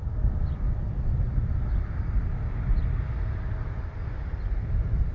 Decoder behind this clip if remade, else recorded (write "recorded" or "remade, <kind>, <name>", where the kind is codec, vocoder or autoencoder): recorded